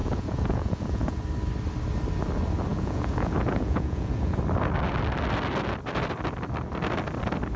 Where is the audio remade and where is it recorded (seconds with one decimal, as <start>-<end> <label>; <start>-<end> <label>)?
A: 0.0-1.2 remade; 1.2-2.7 recorded; 2.7-4.4 remade; 4.4-7.6 recorded